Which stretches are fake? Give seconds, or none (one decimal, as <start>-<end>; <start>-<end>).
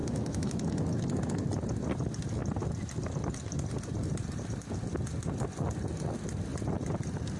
0.0-0.8